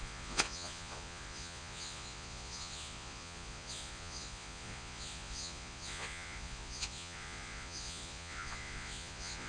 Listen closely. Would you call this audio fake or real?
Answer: fake